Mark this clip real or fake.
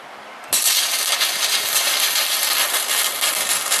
real